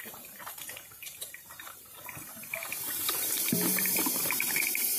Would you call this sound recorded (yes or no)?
no